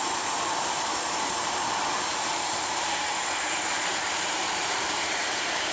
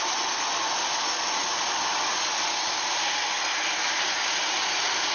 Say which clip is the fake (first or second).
first